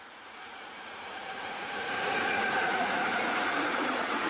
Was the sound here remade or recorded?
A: remade